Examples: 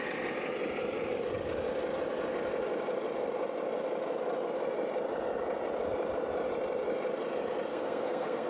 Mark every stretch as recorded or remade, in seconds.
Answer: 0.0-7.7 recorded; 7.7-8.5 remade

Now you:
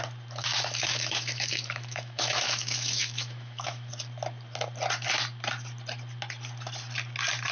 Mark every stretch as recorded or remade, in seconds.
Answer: 0.0-0.4 recorded; 0.4-3.9 remade; 3.9-7.5 recorded

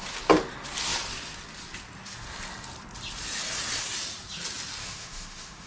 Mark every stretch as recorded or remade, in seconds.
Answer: 0.0-4.8 recorded; 4.8-5.7 remade

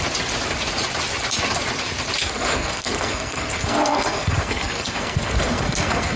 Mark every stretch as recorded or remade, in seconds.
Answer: 0.0-2.2 recorded; 2.2-6.2 remade

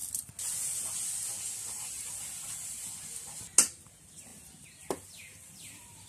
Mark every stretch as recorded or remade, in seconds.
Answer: 0.0-6.1 recorded